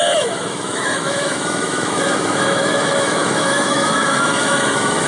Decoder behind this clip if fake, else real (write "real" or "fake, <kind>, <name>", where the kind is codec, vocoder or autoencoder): fake, autoencoder, DAC-VAE